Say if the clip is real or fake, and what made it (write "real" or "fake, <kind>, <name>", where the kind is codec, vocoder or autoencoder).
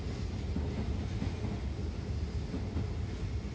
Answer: real